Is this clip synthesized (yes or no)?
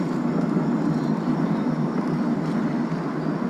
no